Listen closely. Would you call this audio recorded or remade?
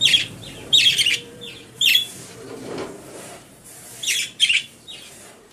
remade